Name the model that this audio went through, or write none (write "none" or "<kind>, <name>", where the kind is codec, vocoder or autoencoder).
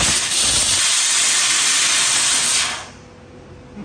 none